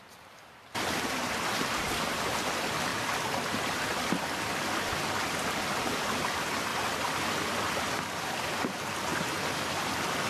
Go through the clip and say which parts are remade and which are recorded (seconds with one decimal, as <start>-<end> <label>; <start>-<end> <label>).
0.0-10.3 recorded